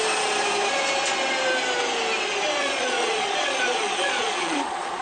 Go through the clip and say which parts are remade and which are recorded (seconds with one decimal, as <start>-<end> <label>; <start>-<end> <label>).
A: 0.0-2.6 recorded; 2.6-5.0 remade